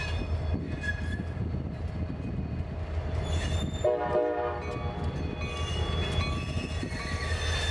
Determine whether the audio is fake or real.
real